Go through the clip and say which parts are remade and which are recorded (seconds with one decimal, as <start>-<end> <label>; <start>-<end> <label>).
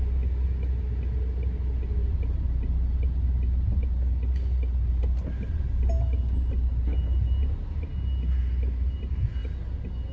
0.0-10.1 recorded